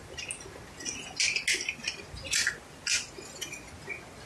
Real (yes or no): yes